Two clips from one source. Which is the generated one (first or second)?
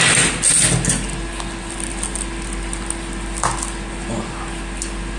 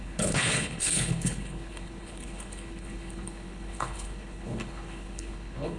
second